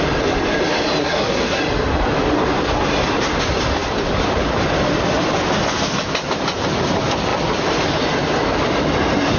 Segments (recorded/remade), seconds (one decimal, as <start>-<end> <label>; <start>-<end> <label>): 0.0-1.0 recorded; 1.0-1.6 remade; 1.6-9.4 recorded